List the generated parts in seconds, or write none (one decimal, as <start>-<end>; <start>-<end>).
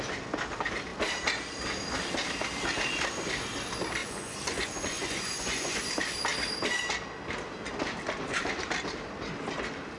4.0-5.8